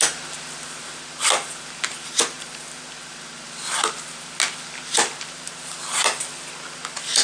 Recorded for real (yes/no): yes